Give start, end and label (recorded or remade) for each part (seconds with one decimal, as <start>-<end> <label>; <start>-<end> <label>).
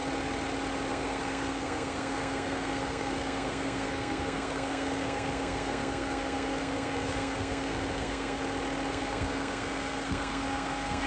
0.0-0.9 recorded; 0.9-8.4 remade; 8.4-8.9 recorded; 8.9-11.1 remade